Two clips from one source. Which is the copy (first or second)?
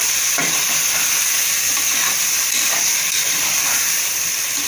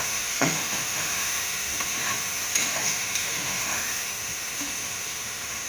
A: second